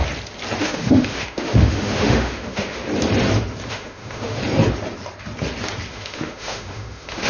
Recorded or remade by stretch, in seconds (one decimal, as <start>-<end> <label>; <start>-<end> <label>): 0.0-0.6 recorded; 0.6-2.8 remade; 2.8-3.7 recorded; 3.7-4.4 remade; 4.4-5.9 recorded; 5.9-7.3 remade